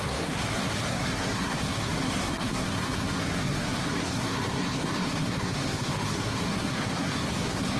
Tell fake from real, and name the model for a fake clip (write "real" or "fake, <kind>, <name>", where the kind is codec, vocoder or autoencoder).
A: fake, codec, SNAC